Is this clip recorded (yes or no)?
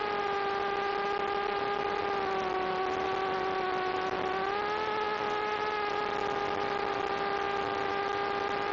yes